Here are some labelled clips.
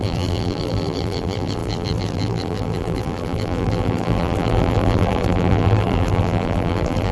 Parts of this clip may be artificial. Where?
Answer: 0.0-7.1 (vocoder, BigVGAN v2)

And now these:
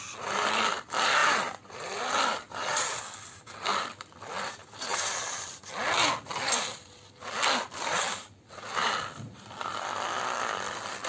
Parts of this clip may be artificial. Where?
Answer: 0.0-11.1 (vocoder, BigVGAN v2)

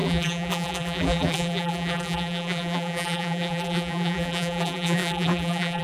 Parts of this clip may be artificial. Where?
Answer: 0.0-5.8 (vocoder, BigVGAN v2)

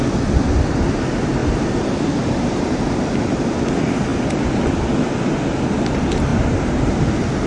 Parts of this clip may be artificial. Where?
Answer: 1.4-2.8 (vocoder, BigVGAN v2); 6.3-7.0

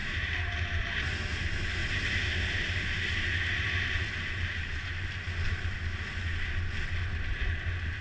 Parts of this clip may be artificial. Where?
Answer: 0.0-0.5 (vocoder, BigVGAN v2)

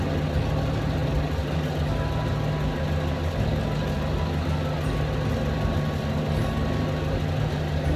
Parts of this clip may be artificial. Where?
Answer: none

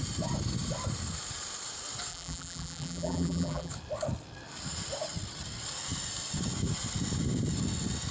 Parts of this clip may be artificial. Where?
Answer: 2.1-3.7 (vocoder, BigVGAN v2)

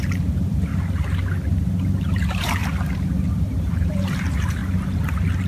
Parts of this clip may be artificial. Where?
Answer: 0.0-0.7 (vocoder, BigVGAN v2); 1.7-2.6; 3.3-4.6